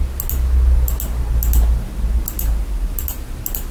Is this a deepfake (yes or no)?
no